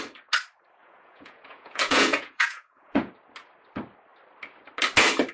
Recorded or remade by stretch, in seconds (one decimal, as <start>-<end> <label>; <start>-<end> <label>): 0.0-0.8 recorded; 0.8-3.1 remade; 3.1-5.3 recorded

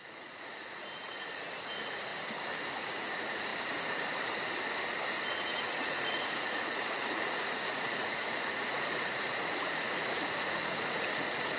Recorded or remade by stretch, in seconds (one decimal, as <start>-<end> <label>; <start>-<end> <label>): 0.0-2.1 remade; 2.1-2.7 recorded; 2.7-3.5 remade; 3.5-5.3 recorded; 5.3-11.6 remade

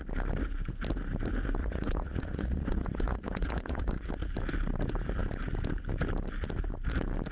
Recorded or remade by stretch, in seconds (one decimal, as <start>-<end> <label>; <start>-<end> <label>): 0.0-1.6 recorded; 1.6-4.3 remade; 4.3-7.3 recorded

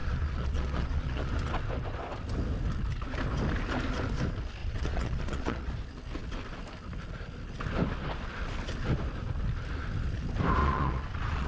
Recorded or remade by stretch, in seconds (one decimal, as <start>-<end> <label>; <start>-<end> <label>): 0.0-1.3 remade; 1.3-4.6 recorded; 4.6-5.7 remade; 5.7-10.6 recorded; 10.6-11.5 remade

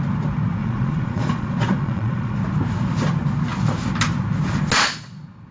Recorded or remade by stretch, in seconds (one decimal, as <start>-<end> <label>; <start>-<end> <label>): 0.0-0.6 recorded; 0.6-2.4 remade; 2.4-5.5 recorded

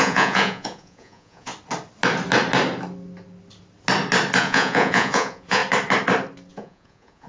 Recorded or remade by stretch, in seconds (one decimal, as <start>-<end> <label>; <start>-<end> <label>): 0.0-1.5 remade; 1.5-4.4 recorded; 4.4-5.6 remade; 5.6-6.5 recorded; 6.5-7.3 remade

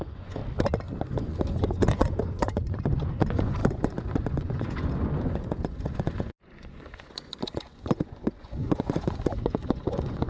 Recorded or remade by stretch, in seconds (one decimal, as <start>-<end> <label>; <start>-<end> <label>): 0.0-0.4 remade; 0.4-1.0 recorded; 1.0-10.3 remade

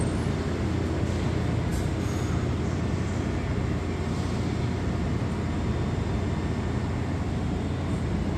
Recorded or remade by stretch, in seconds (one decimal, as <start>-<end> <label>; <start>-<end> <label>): 0.0-8.4 recorded